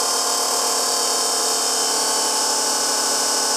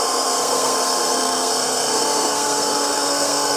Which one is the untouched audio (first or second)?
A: first